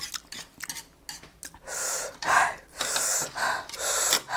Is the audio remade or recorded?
recorded